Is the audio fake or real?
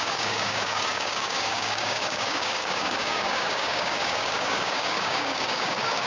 fake